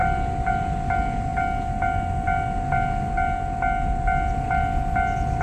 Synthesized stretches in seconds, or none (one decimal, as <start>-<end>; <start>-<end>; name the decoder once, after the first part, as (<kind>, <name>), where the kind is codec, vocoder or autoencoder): none